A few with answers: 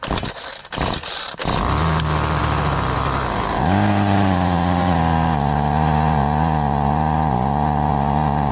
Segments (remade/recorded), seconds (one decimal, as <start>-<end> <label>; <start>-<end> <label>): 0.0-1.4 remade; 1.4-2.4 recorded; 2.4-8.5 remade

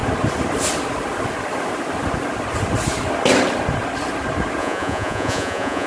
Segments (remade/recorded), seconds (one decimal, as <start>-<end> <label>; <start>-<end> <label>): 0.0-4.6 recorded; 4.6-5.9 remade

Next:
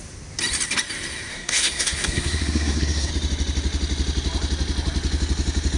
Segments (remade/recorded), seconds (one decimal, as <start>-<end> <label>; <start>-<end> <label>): 0.0-1.3 recorded; 1.3-3.1 remade; 3.1-5.8 recorded

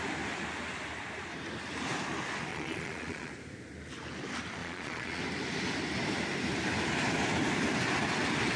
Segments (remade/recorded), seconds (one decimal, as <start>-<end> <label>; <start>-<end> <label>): 0.0-2.5 recorded; 2.5-3.3 remade; 3.3-4.6 recorded; 4.6-5.2 remade; 5.2-8.6 recorded